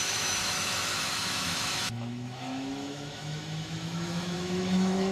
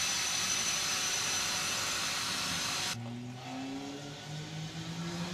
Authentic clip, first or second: second